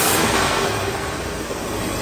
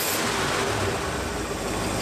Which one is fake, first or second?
first